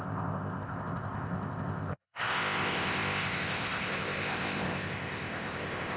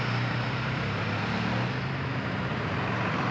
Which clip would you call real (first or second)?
second